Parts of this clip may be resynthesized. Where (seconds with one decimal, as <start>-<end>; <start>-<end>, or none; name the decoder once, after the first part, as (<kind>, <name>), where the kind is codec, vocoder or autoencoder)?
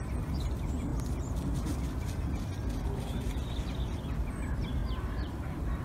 0.0-0.9 (vocoder, BigVGAN v2); 4.3-5.8